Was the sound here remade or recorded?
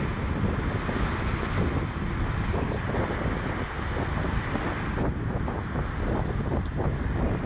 recorded